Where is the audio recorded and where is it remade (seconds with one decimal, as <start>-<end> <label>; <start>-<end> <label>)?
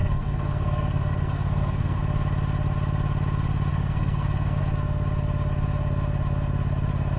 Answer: 0.0-2.0 remade; 2.0-3.7 recorded; 3.7-4.6 remade; 4.6-7.2 recorded